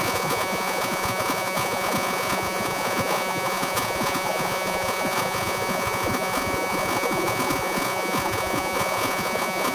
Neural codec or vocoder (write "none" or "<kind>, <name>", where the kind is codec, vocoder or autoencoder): vocoder, Vocos